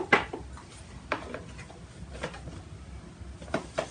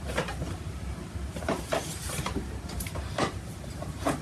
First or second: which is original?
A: first